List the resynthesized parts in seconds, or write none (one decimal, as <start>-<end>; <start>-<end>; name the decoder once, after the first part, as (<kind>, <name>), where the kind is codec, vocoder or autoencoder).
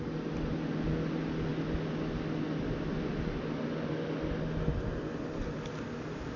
none